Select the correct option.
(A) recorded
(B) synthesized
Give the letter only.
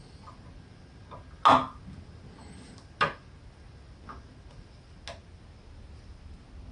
A